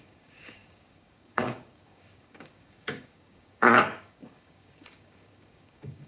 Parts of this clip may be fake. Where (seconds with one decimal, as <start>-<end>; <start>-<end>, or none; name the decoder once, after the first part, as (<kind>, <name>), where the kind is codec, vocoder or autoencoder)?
0.0-6.1 (codec, DAC)